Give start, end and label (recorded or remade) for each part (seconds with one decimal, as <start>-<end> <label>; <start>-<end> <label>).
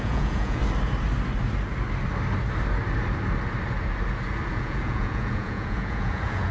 0.0-0.6 remade; 0.6-4.5 recorded; 4.5-6.5 remade